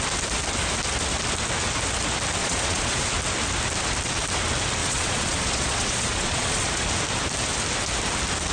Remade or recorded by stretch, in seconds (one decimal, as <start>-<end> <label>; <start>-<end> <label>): 0.0-2.4 recorded; 2.4-3.1 remade; 3.1-4.8 recorded; 4.8-6.9 remade; 6.9-8.5 recorded